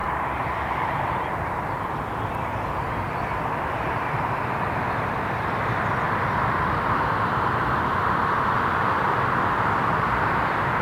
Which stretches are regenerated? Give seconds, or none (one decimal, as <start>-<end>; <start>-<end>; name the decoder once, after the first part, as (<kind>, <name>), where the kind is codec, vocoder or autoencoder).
0.0-10.8 (vocoder, BigVGAN v2)